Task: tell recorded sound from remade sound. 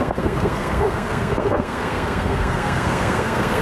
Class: remade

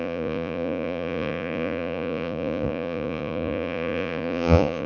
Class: remade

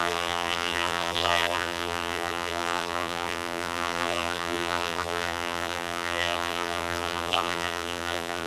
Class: remade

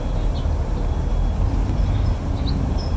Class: recorded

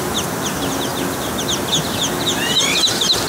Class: recorded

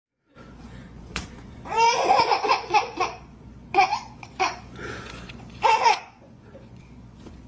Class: remade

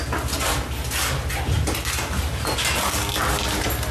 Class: recorded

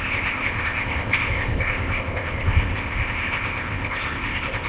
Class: remade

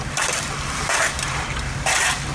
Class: remade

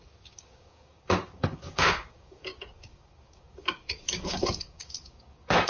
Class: remade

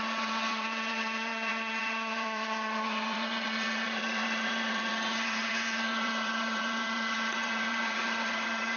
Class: remade